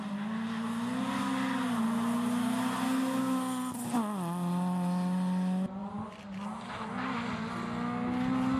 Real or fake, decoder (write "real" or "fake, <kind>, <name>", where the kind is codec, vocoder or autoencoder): real